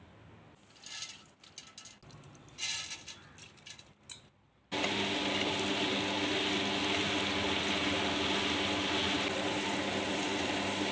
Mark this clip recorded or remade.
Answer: recorded